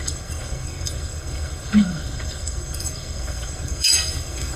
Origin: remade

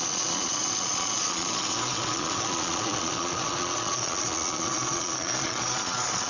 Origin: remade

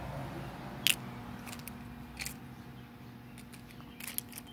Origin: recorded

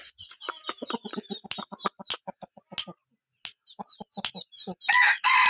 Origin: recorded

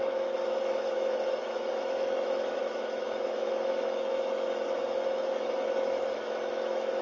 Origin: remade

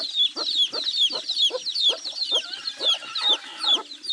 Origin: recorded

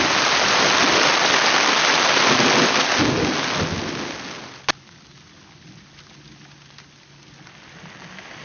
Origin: recorded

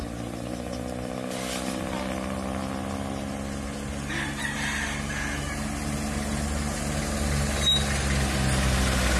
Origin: recorded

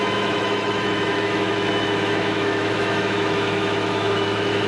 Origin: remade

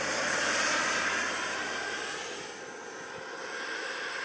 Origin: remade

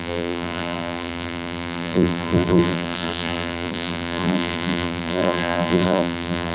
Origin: remade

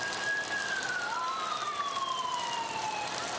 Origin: remade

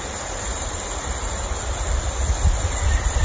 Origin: recorded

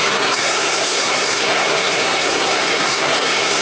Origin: remade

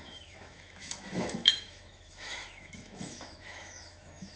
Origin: remade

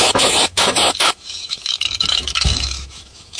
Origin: remade